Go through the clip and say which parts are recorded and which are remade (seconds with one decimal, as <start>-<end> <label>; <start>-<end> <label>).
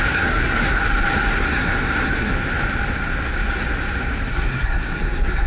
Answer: 0.0-0.8 remade; 0.8-1.3 recorded; 1.3-2.3 remade; 2.3-4.3 recorded; 4.3-5.5 remade